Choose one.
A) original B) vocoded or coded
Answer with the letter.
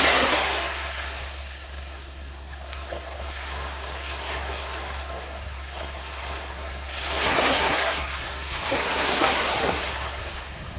B